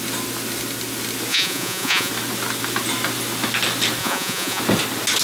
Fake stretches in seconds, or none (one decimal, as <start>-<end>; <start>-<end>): 1.3-2.1; 4.0-4.6